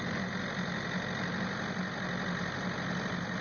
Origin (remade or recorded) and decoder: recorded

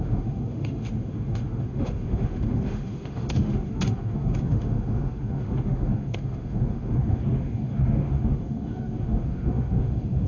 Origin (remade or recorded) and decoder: remade, autoencoder, DAC-VAE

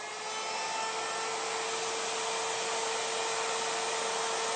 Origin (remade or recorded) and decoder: recorded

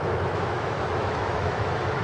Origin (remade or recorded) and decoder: remade, autoencoder, DAC-VAE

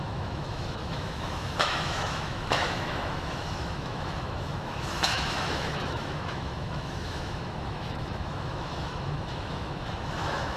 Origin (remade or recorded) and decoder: remade, autoencoder, DAC-VAE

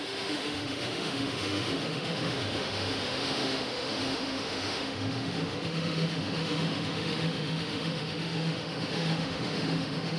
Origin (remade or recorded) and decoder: remade, autoencoder, DAC-VAE